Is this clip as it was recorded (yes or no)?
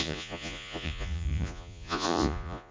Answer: no